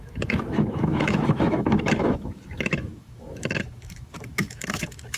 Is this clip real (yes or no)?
no